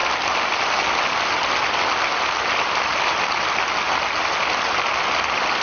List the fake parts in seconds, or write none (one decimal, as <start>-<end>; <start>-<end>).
none